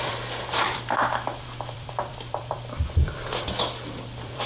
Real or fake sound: fake